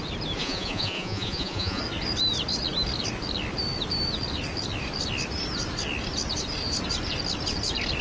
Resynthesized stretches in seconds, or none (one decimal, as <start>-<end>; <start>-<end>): 0.4-1.8